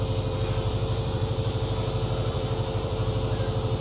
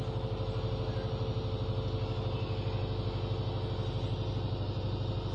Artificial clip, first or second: first